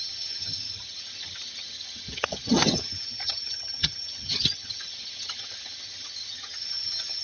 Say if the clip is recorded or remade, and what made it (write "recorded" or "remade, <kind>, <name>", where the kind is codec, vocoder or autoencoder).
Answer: remade, vocoder, HiFi-GAN